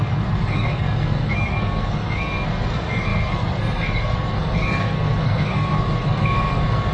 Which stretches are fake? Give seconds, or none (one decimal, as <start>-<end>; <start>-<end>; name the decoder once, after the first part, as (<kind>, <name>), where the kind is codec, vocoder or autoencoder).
0.0-6.9 (codec, SNAC)